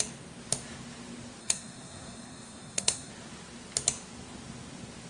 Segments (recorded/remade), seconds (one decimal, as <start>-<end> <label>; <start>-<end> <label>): 0.0-1.4 recorded; 1.4-3.1 remade; 3.1-5.1 recorded